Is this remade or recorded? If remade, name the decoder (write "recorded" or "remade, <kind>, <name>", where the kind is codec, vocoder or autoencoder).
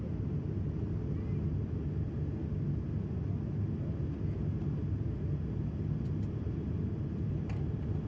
recorded